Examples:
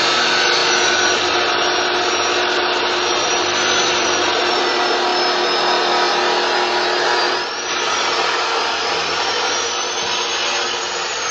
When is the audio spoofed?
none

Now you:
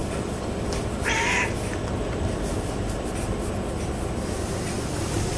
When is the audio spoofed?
0.0-3.2 (vocoder, BigVGAN v2)